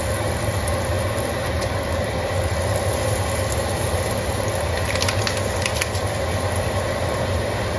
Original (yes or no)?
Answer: yes